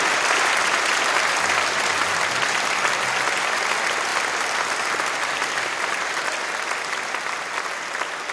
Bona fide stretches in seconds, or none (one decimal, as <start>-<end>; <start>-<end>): 0.0-8.3